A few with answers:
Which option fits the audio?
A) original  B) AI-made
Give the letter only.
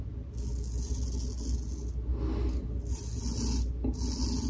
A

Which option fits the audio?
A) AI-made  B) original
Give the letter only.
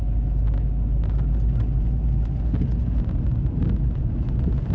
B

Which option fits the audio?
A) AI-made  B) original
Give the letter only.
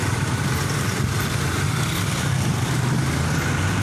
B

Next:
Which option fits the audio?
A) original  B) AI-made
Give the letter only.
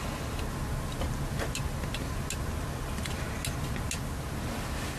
A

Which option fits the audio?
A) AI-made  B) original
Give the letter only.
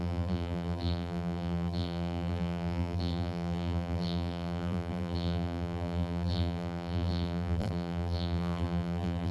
A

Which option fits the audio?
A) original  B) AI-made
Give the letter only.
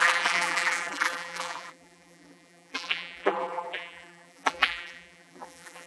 B